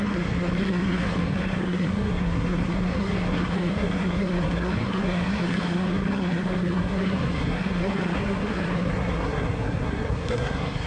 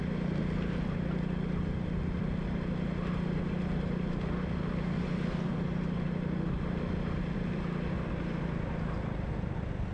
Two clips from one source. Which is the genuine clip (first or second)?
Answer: second